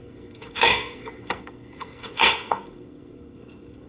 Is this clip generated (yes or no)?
yes